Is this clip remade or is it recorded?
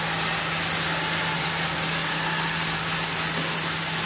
recorded